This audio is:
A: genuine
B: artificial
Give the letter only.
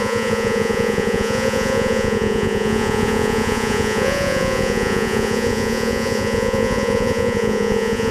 B